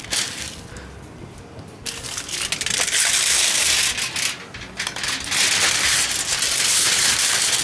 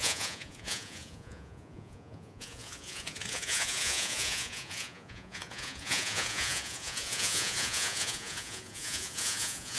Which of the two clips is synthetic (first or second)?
second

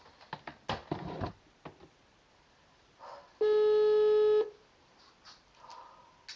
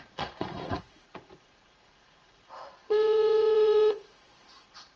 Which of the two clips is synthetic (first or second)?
second